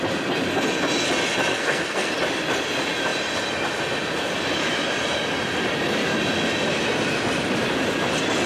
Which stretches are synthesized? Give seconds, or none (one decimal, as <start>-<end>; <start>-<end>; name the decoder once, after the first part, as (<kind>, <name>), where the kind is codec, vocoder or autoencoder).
1.5-2.1 (codec, SNAC)